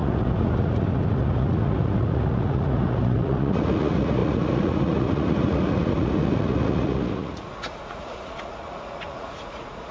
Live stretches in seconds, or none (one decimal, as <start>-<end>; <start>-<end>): none